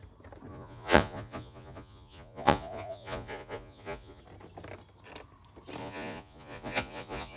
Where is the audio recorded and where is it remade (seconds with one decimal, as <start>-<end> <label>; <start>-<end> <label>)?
0.0-0.5 recorded; 0.5-4.2 remade; 4.2-5.8 recorded; 5.8-7.4 remade